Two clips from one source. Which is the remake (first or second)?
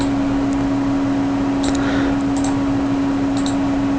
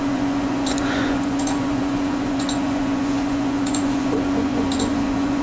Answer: second